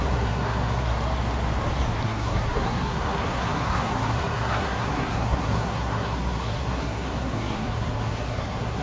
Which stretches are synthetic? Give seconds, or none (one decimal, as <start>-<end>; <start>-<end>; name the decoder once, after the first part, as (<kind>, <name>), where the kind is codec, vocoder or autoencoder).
0.0-0.9 (codec, SNAC); 2.0-8.8